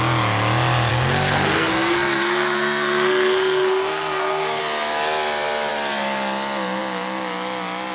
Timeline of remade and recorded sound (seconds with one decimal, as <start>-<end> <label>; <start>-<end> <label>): 0.0-0.9 recorded; 0.9-4.6 remade; 4.6-7.9 recorded